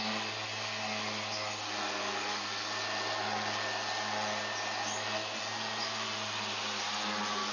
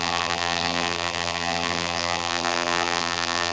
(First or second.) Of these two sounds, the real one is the first